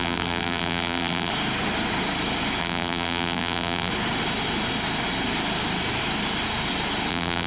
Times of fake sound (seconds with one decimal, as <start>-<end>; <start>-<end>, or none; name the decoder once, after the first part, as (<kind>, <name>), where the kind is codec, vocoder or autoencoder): 0.0-1.3 (vocoder, BigVGAN v2); 2.6-3.9; 7.1-7.5